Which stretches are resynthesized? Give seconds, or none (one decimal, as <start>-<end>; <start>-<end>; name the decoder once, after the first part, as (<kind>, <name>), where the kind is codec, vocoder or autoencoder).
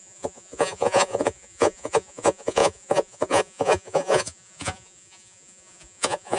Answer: 0.0-6.4 (vocoder, Vocos)